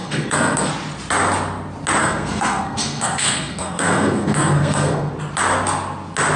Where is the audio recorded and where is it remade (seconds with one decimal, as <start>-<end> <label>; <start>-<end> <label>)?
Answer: 0.0-0.7 remade; 0.7-2.0 recorded; 2.0-5.1 remade; 5.1-6.4 recorded